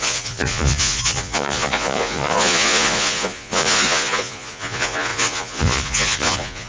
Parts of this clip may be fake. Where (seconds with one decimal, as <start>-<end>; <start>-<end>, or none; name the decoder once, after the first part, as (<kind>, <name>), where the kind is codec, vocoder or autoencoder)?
0.0-6.7 (vocoder, Vocos)